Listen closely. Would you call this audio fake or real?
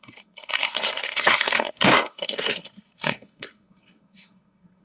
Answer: fake